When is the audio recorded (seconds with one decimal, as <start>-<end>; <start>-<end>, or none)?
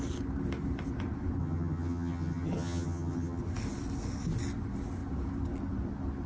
0.0-1.4; 3.4-6.3